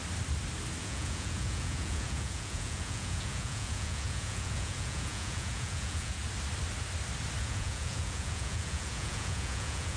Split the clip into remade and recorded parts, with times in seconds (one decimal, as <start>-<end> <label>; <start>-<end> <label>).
0.0-0.8 recorded; 0.8-6.2 remade; 6.2-7.4 recorded; 7.4-10.0 remade